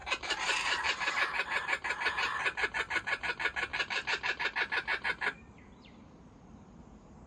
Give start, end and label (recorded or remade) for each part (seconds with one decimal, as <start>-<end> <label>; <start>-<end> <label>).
0.0-2.3 remade; 2.3-2.9 recorded; 2.9-3.7 remade; 3.7-5.5 recorded; 5.5-7.3 remade